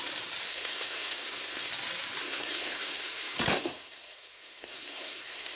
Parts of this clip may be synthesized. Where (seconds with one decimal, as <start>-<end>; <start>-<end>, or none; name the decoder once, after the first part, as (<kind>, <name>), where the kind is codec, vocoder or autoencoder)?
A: 0.5-1.7 (codec, SNAC); 2.2-5.6